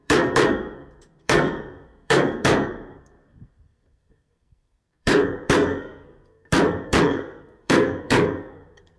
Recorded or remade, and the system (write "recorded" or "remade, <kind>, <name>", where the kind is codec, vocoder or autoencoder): remade, codec, SNAC